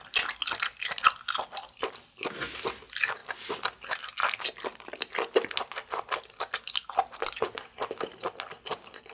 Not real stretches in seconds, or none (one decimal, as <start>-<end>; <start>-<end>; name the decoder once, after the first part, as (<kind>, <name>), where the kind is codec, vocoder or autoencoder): none